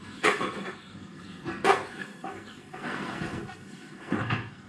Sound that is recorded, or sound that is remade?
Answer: remade